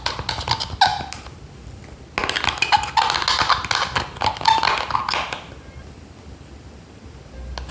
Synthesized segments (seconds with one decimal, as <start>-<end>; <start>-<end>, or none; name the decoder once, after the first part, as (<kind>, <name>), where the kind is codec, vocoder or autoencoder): 0.9-1.5 (vocoder, BigVGAN v2)